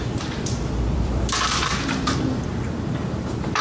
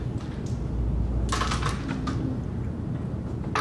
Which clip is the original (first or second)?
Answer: second